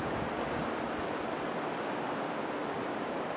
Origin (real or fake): real